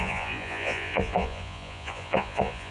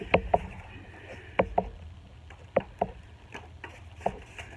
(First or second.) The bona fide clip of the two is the second